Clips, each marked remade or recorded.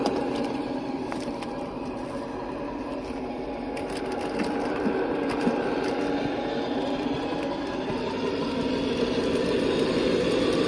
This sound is remade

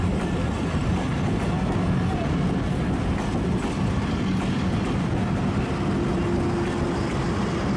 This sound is recorded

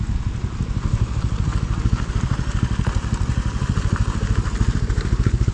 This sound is recorded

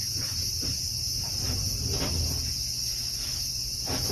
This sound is recorded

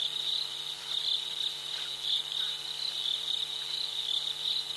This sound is remade